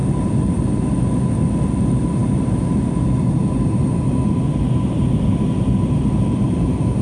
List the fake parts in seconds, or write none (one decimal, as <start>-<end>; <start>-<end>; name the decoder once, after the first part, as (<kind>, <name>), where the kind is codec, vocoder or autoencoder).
none

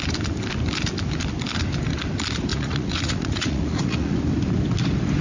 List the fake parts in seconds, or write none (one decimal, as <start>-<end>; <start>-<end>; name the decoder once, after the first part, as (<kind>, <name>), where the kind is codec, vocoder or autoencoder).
2.5-4.2 (vocoder, Vocos)

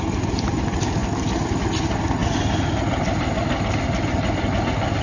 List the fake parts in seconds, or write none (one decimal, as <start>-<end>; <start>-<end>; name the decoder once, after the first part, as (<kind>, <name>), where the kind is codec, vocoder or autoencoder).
none

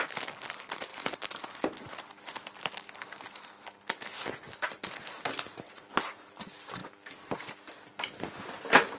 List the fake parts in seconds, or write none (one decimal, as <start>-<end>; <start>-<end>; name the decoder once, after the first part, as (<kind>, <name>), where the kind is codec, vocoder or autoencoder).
none

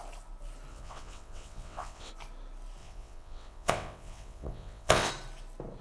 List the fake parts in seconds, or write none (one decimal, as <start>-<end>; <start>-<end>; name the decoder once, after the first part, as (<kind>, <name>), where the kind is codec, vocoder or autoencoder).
0.7-2.1 (vocoder, WaveNeXt); 2.8-5.1

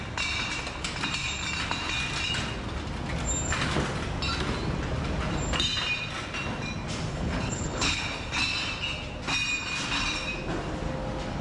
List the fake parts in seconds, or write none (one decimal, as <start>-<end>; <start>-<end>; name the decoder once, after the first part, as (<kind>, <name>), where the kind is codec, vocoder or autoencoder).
7.1-8.0 (codec, HILCodec)

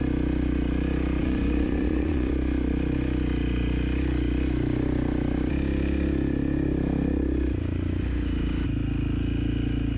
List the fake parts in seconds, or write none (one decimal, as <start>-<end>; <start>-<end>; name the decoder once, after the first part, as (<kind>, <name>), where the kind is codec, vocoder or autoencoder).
1.2-2.3 (vocoder, Vocos)